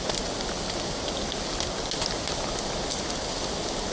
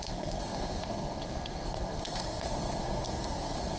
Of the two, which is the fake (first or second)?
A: second